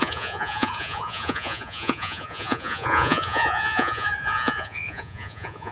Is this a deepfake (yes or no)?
yes